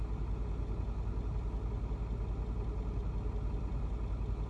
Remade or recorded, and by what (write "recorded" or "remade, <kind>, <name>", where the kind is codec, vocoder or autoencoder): recorded